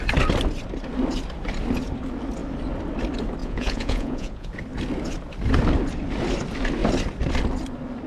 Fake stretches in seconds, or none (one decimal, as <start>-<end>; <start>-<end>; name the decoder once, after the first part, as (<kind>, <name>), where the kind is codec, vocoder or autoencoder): 3.4-4.5 (vocoder, Vocos)